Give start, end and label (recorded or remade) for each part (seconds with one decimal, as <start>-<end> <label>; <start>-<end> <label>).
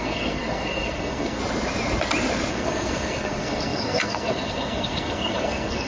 0.0-1.4 remade; 1.4-2.5 recorded; 2.5-5.9 remade